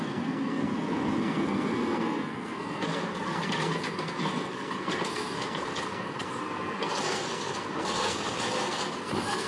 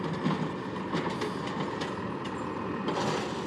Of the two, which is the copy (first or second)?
first